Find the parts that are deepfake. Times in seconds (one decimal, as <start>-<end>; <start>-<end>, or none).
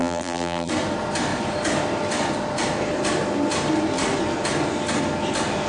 0.0-0.7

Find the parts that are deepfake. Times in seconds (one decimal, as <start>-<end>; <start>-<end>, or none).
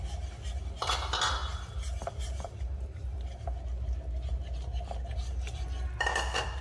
1.4-3.6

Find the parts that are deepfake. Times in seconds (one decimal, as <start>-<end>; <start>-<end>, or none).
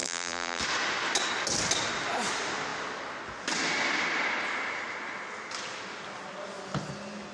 0.0-0.6